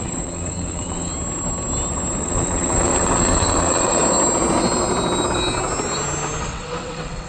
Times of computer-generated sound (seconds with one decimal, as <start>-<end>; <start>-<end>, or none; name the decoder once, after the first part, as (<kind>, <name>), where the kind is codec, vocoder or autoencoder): 0.0-1.1 (vocoder, WaveNeXt); 2.2-4.0; 6.4-7.3